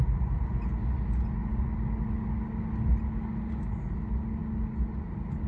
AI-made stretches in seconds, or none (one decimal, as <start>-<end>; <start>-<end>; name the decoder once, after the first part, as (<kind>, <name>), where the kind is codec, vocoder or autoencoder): none